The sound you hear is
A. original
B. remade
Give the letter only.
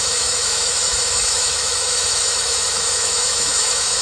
B